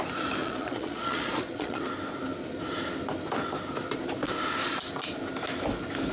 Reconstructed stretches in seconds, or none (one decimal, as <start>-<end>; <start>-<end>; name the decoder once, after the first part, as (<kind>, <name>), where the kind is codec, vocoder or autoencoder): 0.4-1.8 (vocoder, Vocos)

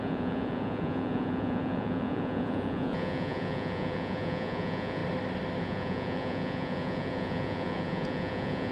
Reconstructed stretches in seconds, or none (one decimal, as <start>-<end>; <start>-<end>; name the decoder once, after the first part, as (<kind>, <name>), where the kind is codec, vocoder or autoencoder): 0.0-5.0 (vocoder, Vocos); 5.6-8.7

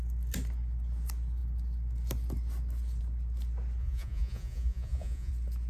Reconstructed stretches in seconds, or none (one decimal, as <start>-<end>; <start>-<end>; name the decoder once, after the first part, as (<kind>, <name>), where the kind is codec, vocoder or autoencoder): 3.8-5.3 (vocoder, Vocos)

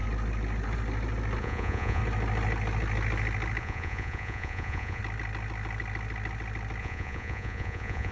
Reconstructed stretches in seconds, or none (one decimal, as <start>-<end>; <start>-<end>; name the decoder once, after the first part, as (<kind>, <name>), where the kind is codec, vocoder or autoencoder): 1.4-2.0 (vocoder, Vocos); 3.6-5.0; 6.8-8.1

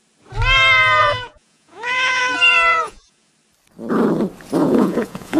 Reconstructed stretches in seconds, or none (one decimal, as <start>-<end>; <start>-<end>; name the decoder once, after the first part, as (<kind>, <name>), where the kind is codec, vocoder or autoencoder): 1.0-2.2 (vocoder, Vocos); 2.7-3.3; 4.6-5.4

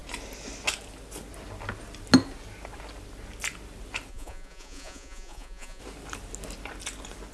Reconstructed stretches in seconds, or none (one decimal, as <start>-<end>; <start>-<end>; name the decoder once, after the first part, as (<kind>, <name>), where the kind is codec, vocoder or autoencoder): 4.1-5.8 (vocoder, Vocos)